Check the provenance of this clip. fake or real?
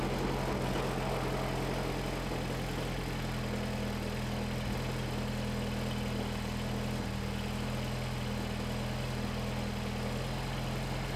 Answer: real